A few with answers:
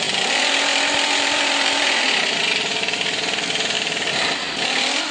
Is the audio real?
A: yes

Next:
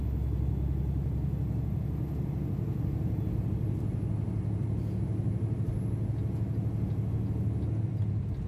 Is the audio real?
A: yes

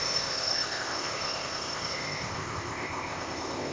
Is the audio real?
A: no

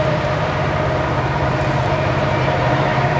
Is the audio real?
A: no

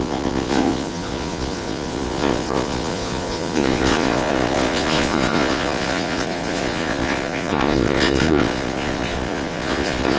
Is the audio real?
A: no